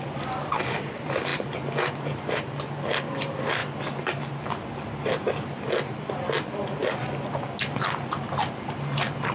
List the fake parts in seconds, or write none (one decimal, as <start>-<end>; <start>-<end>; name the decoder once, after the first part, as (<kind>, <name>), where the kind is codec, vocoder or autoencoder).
none